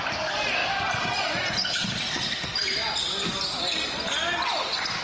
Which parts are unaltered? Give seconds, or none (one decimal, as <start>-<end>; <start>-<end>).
0.0-0.6; 3.6-5.0